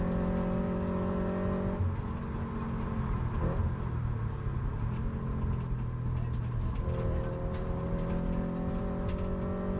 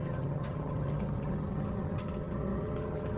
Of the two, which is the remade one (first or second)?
second